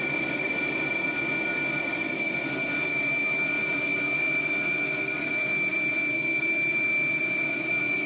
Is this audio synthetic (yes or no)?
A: no